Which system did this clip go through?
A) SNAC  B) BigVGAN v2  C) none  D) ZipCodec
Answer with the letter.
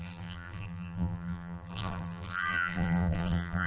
B